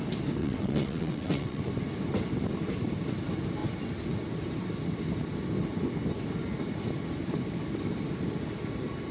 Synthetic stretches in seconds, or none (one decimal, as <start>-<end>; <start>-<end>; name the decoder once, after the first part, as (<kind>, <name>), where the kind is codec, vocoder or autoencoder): 0.4-1.6 (vocoder, WaveNeXt)